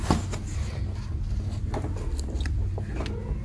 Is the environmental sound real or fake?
real